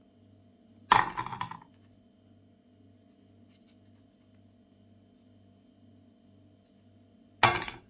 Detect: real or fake real